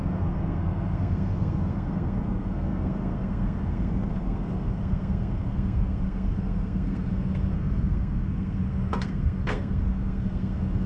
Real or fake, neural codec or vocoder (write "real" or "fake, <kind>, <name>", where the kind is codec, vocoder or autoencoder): fake, codec, SNAC